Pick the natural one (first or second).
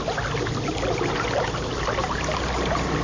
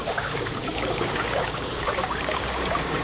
first